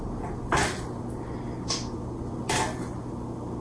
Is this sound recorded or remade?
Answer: recorded